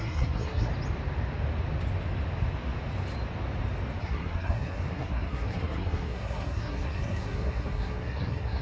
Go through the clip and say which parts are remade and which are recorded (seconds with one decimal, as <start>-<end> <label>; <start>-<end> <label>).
0.0-0.7 remade; 0.7-4.0 recorded; 4.0-8.6 remade